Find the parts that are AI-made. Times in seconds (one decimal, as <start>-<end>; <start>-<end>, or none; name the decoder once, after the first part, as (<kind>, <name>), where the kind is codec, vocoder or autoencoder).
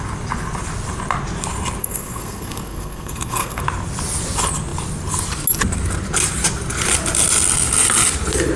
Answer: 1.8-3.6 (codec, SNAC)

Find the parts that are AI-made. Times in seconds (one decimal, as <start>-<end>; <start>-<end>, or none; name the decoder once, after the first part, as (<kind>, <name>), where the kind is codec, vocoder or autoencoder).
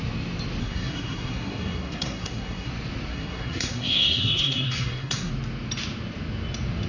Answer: 0.6-2.7 (codec, SNAC); 3.1-5.3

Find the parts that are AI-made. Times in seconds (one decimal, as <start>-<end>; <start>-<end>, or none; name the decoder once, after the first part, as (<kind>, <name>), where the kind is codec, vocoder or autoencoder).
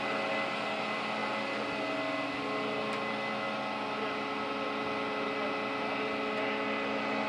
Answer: none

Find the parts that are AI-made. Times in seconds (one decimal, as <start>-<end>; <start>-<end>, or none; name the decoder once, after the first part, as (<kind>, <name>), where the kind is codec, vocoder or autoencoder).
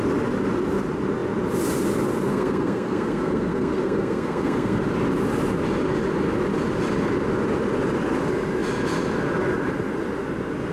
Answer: 2.3-4.8 (codec, SNAC)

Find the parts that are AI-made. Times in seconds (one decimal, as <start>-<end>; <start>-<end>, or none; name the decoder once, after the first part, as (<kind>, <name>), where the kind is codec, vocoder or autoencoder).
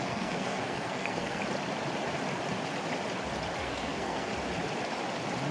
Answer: 0.0-1.4 (codec, SNAC); 3.6-4.3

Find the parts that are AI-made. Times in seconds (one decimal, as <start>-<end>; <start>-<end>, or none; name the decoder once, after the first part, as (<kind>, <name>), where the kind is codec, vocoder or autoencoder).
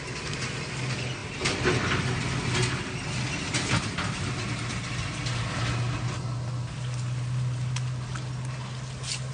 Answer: none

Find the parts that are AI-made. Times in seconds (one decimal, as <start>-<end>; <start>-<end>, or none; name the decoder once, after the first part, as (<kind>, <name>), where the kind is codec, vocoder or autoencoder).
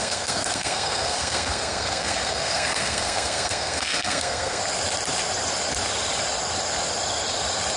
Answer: 0.0-4.6 (codec, SNAC)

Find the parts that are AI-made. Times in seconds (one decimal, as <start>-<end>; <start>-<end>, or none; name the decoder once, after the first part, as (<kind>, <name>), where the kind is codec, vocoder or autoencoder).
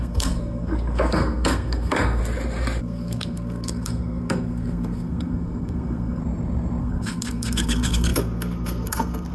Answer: 0.0-2.2 (codec, SNAC); 2.8-6.2; 6.8-9.3